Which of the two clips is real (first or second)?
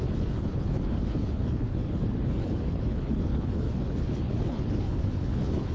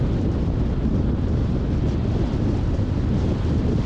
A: second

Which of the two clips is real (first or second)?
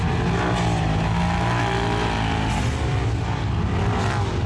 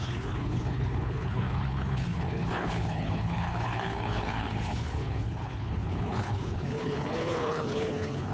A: first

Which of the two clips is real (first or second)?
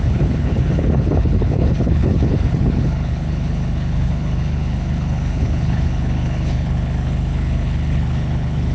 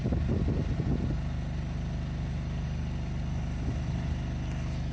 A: second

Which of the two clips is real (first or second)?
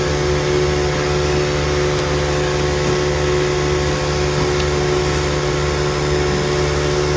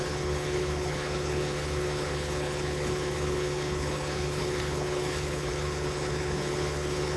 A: first